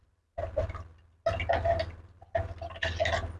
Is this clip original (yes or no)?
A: yes